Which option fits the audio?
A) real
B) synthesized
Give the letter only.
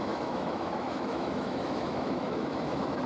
B